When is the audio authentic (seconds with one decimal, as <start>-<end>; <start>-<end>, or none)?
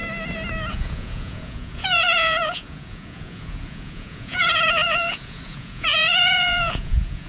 0.0-0.7